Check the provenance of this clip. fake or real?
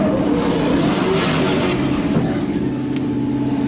real